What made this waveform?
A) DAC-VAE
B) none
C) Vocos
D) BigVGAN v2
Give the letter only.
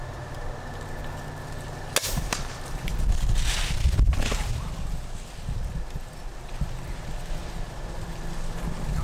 B